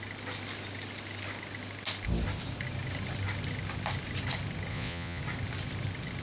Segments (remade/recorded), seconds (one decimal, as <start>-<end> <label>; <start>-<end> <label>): 0.0-4.7 recorded; 4.7-5.2 remade; 5.2-6.2 recorded